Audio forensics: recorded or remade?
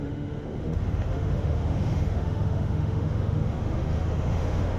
remade